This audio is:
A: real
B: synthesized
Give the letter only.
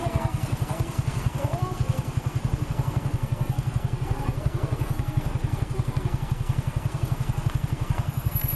B